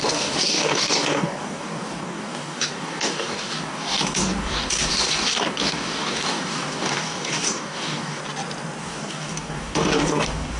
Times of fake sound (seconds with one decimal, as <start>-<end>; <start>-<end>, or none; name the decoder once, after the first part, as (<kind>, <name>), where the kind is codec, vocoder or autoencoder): 0.0-8.2 (codec, DAC); 8.8-10.6